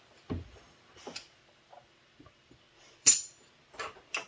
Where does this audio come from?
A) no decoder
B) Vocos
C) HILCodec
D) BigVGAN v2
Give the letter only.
A